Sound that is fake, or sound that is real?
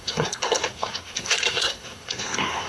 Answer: fake